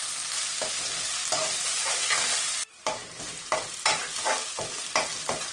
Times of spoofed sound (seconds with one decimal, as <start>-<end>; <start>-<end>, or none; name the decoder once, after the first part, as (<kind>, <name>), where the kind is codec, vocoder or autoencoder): 2.6-3.2 (vocoder, BigVGAN v2)